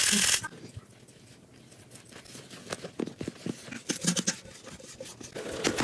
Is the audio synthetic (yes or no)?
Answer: no